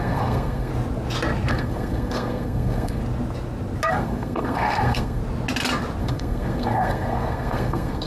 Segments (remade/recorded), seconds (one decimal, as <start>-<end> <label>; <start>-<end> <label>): 0.0-0.7 remade; 0.7-1.5 recorded; 1.5-3.0 remade; 3.0-3.9 recorded; 3.9-5.2 remade; 5.2-6.0 recorded; 6.0-8.1 remade